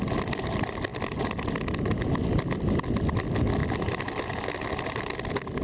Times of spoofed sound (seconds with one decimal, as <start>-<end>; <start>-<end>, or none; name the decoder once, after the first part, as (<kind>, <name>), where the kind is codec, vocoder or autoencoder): none